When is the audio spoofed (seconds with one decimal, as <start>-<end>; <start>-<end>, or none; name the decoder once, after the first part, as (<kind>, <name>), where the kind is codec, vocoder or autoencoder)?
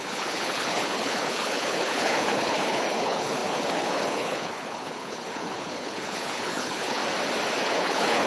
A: 0.0-7.0 (codec, HILCodec); 7.6-8.3